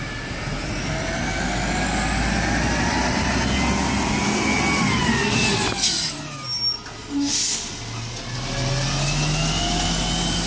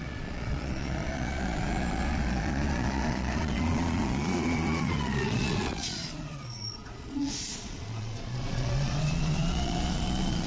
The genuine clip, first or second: first